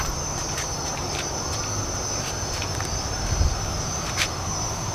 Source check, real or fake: fake